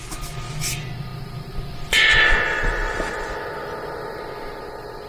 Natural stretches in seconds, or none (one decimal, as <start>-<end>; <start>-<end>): 0.0-1.1; 4.2-5.1